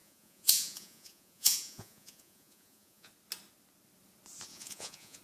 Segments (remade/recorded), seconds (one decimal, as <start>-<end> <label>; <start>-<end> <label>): 0.0-3.1 remade; 3.1-4.5 recorded; 4.5-5.2 remade